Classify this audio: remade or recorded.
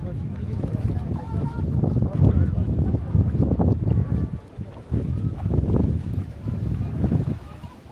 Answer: remade